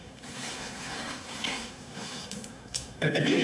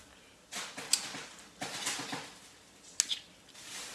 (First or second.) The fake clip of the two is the first